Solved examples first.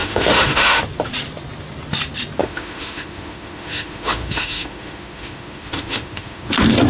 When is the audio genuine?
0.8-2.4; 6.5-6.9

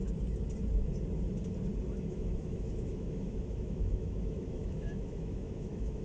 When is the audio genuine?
0.0-1.8